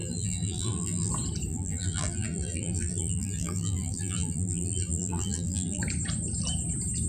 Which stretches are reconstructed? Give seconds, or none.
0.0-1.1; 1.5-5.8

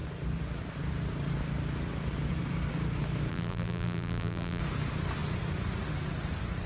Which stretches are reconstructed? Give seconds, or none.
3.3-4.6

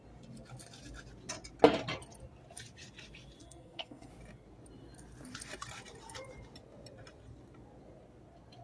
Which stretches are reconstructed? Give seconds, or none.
3.4-4.1

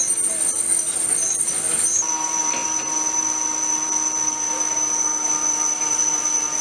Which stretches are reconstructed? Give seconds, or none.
none

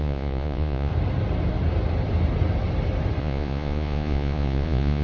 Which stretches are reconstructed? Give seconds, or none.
0.0-0.9; 3.2-5.0